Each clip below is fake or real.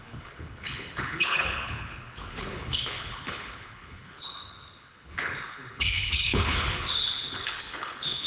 fake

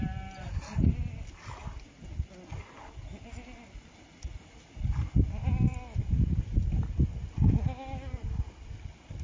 real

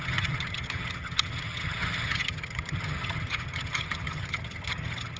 fake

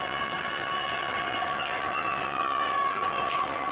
fake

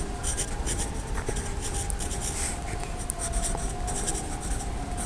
real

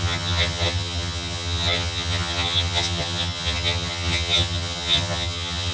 fake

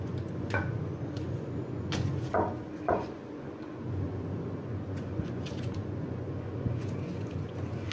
fake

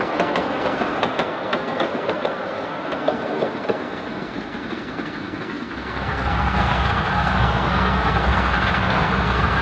fake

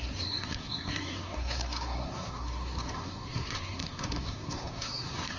fake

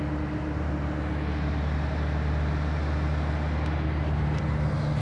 real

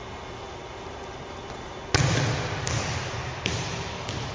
real